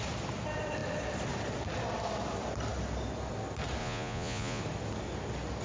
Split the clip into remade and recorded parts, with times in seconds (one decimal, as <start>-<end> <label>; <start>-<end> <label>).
0.0-3.8 recorded; 3.8-4.6 remade; 4.6-5.6 recorded